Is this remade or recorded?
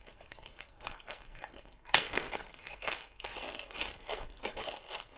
remade